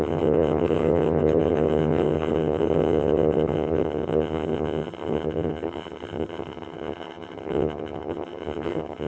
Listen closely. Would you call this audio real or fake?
fake